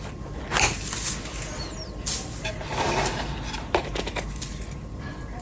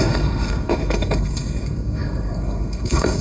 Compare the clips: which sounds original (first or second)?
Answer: first